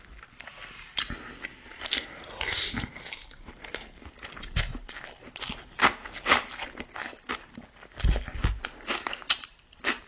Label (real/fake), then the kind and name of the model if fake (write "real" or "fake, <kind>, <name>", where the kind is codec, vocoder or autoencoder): real